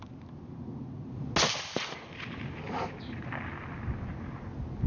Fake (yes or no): no